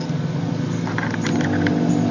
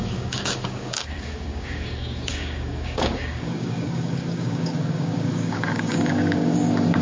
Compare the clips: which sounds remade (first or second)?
second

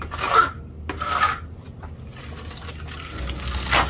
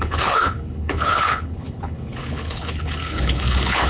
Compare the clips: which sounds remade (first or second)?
second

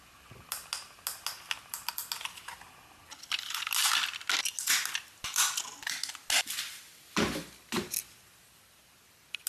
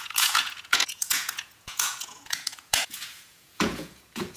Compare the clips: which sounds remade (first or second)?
second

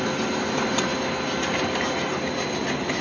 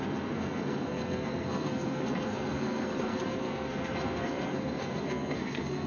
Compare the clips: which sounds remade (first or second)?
second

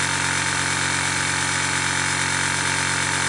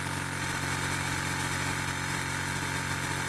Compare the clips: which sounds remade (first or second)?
second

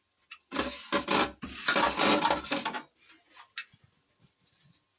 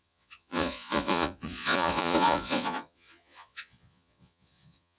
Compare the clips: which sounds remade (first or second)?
second